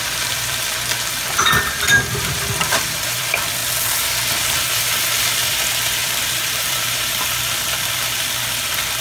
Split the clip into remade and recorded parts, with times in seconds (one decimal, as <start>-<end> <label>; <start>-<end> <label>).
0.0-0.6 remade; 0.6-1.2 recorded; 1.2-3.6 remade; 3.6-4.7 recorded; 4.7-9.0 remade